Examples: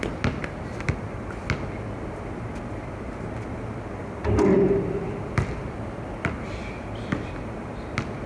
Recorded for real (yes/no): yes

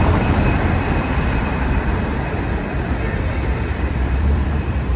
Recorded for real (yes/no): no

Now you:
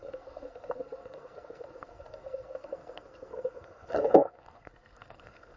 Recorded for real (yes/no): no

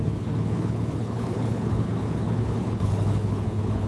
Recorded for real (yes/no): no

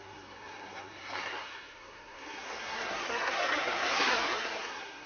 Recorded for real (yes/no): no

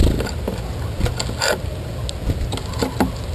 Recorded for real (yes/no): yes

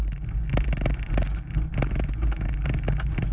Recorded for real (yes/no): yes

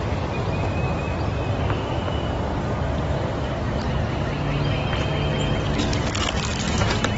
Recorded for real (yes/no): yes